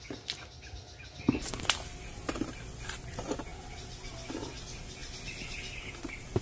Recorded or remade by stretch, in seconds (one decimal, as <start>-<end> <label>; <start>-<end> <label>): 0.0-6.4 recorded